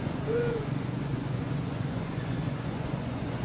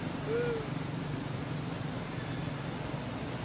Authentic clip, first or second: second